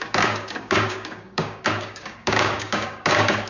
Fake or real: fake